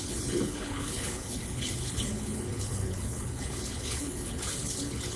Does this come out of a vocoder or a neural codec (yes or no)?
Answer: yes